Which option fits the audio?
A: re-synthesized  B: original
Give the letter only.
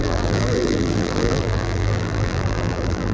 A